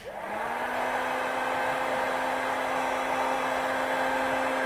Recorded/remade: recorded